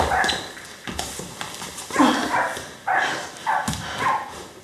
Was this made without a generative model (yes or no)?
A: yes